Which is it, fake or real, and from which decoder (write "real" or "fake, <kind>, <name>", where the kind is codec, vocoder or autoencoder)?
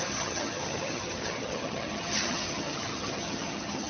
fake, vocoder, HiFi-GAN